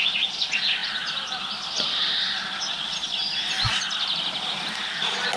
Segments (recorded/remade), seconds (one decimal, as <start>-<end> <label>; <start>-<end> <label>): 0.0-5.4 recorded